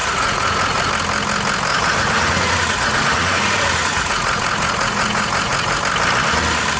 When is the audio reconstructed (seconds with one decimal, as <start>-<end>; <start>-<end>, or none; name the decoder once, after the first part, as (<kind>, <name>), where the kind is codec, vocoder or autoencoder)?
0.0-0.9 (vocoder, Vocos); 1.7-5.8